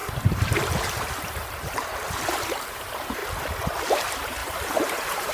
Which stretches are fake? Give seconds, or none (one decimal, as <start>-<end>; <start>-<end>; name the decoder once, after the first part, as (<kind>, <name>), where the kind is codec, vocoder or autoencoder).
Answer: 0.0-3.2 (vocoder, BigVGAN v2); 3.8-5.3